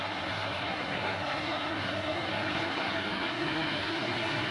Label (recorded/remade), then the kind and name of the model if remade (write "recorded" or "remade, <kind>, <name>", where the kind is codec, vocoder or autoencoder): remade, codec, SNAC